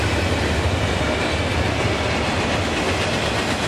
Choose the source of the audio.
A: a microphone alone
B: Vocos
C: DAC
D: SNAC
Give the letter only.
A